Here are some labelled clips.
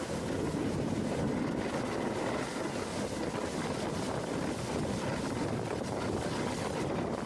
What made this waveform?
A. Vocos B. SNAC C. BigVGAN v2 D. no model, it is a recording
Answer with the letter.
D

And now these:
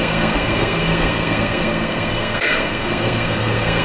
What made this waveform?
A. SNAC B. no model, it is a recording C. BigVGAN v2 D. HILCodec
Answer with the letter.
A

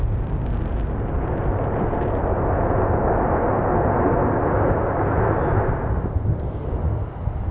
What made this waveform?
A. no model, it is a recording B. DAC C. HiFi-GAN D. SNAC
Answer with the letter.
A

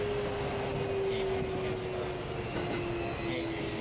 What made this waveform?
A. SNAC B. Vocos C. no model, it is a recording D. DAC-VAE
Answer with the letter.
C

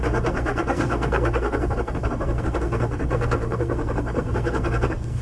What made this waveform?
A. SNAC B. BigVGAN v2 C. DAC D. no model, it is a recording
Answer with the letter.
A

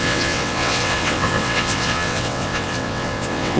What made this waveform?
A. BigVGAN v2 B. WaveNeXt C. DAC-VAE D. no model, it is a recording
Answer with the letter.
B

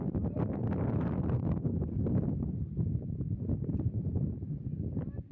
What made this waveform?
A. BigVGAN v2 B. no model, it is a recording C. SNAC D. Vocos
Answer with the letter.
B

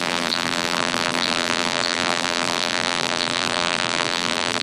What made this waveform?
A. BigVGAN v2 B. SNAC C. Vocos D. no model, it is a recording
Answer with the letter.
A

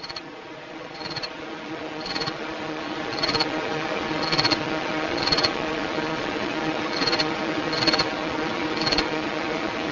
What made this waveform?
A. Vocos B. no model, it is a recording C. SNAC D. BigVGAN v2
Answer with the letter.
A